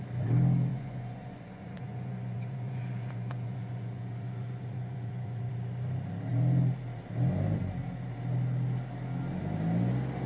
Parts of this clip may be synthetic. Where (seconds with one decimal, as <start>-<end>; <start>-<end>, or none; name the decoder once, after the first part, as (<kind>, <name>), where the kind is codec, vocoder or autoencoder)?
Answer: 0.7-5.5 (vocoder, Vocos)

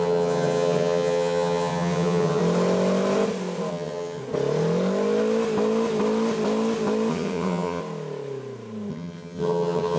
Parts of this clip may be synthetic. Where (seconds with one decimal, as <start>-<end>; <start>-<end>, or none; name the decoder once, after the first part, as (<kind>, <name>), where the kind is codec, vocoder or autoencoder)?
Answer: 0.0-2.4 (vocoder, HiFi-GAN); 3.7-4.2; 7.1-7.8; 8.9-10.0

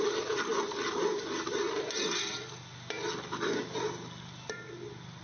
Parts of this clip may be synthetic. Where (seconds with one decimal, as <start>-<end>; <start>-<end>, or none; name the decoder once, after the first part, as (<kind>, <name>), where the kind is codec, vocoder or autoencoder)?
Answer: none

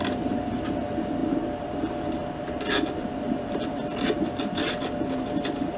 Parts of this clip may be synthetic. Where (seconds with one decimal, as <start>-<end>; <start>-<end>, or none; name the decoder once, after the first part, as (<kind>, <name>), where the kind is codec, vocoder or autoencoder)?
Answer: none

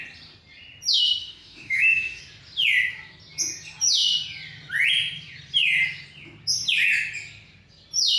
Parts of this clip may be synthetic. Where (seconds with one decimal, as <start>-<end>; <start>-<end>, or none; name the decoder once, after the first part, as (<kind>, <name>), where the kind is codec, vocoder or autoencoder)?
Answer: 1.2-2.2 (autoencoder, DAC-VAE)